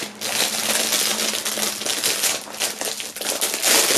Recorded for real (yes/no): yes